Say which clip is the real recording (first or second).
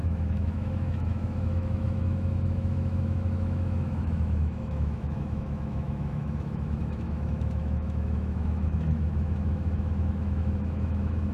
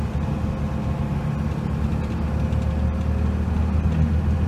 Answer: second